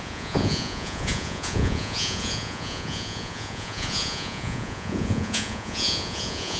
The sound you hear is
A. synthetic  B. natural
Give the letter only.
A